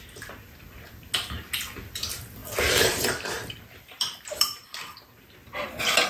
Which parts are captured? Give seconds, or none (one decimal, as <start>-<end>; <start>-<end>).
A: 0.0-2.4; 5.0-6.1